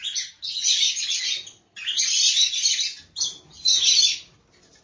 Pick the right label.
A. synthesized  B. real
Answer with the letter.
B